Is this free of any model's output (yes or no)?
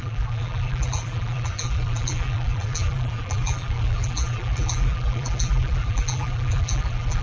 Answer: no